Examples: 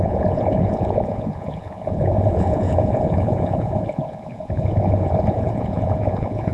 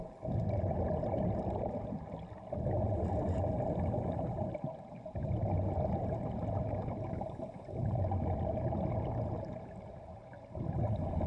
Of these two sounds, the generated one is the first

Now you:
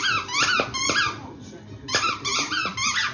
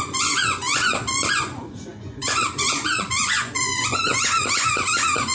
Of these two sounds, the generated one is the second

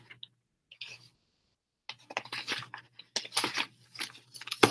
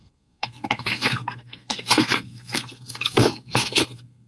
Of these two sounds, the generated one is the second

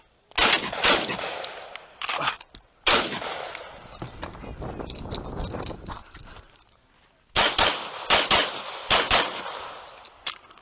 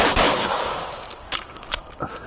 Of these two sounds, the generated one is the second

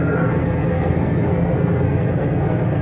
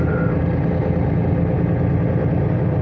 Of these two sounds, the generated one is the first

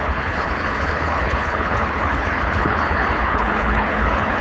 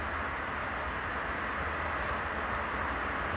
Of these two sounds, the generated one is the first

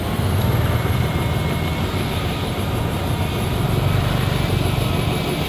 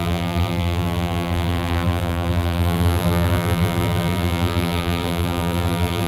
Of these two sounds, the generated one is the second